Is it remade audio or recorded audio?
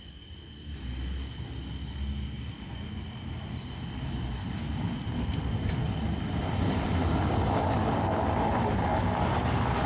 recorded